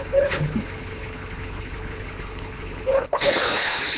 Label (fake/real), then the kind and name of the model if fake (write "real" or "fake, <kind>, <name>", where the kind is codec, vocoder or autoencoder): fake, codec, HILCodec